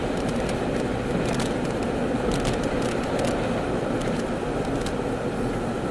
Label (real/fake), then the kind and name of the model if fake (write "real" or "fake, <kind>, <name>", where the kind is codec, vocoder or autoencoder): real